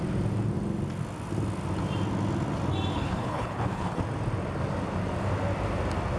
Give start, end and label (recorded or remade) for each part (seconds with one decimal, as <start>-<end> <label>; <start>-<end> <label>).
0.0-2.9 recorded; 2.9-4.0 remade; 4.0-6.2 recorded